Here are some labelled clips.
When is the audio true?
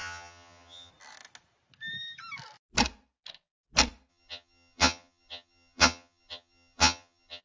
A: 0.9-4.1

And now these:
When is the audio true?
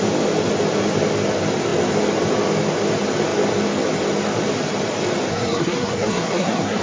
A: 0.0-5.3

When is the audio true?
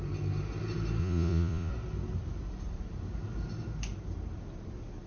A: 0.0-1.0; 1.7-5.1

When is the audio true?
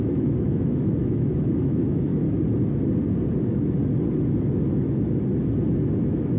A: 2.1-5.9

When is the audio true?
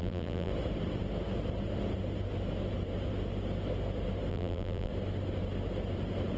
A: 0.5-4.3; 4.9-6.4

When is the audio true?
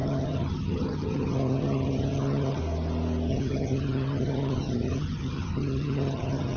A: 2.6-3.3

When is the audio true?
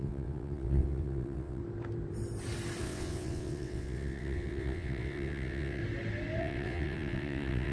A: 1.6-2.8; 5.8-6.4